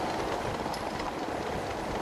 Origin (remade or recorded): recorded